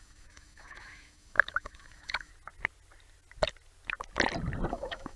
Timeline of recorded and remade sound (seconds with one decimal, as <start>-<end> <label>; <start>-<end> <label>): 0.0-2.3 remade; 2.3-4.7 recorded; 4.7-5.2 remade